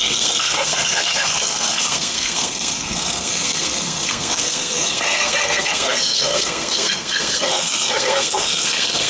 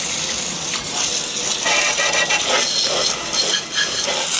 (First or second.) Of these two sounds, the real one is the second